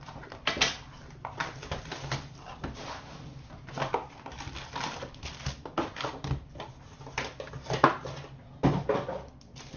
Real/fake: real